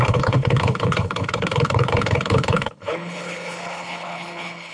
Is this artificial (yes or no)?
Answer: yes